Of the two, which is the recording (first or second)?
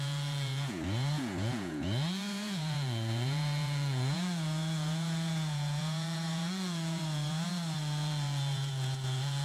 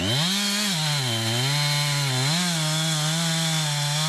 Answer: second